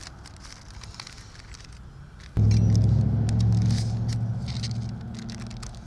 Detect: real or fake real